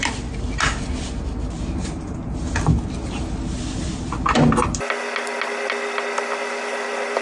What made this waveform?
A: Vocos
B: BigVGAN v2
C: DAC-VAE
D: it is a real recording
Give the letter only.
D